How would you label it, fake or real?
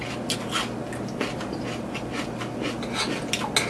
real